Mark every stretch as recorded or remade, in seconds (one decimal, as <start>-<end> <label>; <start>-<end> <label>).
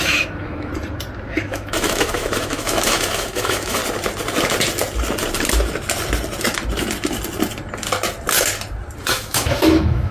0.0-0.7 remade; 0.7-1.3 recorded; 1.3-3.8 remade; 3.8-9.0 recorded; 9.0-10.1 remade